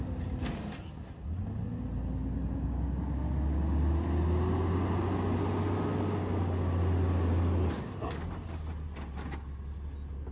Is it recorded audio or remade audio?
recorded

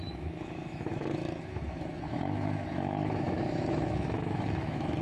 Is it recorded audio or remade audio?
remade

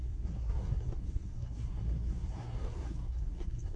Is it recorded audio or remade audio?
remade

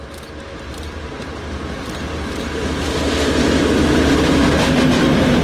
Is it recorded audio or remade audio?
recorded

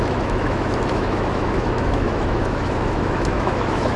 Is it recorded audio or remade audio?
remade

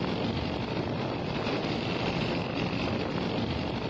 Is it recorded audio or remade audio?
recorded